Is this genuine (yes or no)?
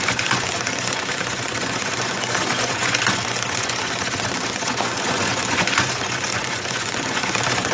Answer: no